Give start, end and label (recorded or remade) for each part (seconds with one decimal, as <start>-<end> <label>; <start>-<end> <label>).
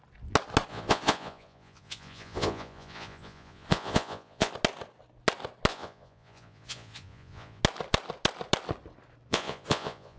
0.0-0.7 recorded; 0.7-4.5 remade; 4.5-5.7 recorded; 5.7-7.6 remade; 7.6-9.3 recorded; 9.3-10.2 remade